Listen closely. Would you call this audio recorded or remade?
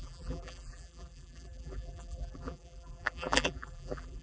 remade